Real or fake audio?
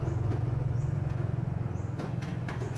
fake